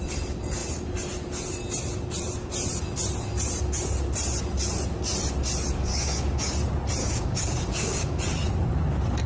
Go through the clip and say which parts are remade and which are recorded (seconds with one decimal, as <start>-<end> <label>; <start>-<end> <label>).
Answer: 0.0-5.9 recorded; 5.9-6.6 remade; 6.6-7.0 recorded; 7.0-8.2 remade; 8.2-9.3 recorded